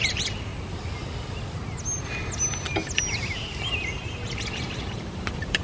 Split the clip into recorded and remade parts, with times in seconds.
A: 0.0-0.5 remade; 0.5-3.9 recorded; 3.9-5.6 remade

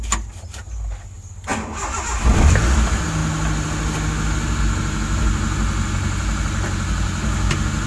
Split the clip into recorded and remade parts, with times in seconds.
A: 0.0-7.9 recorded

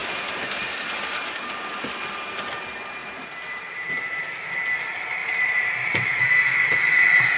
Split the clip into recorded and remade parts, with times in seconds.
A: 0.0-1.3 remade; 1.3-3.0 recorded; 3.0-4.5 remade; 4.5-5.2 recorded; 5.2-6.2 remade; 6.2-7.4 recorded

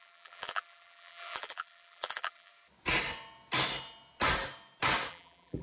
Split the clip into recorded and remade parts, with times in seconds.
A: 0.0-2.5 remade; 2.5-5.1 recorded; 5.1-5.6 remade

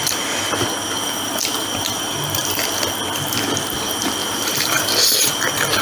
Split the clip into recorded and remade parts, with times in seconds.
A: 0.0-1.6 recorded; 1.6-2.6 remade; 2.6-4.2 recorded; 4.2-5.2 remade; 5.2-5.8 recorded

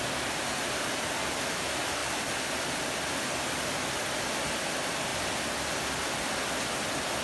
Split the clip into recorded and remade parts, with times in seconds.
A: 0.0-7.2 recorded